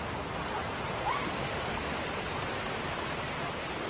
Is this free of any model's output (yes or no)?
yes